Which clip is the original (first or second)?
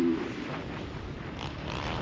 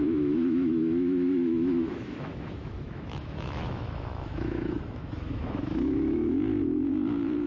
first